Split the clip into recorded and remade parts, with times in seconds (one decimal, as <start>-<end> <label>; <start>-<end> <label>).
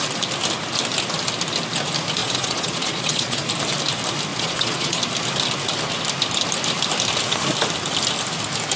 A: 0.0-2.2 recorded; 2.2-3.4 remade; 3.4-4.3 recorded; 4.3-5.0 remade; 5.0-8.8 recorded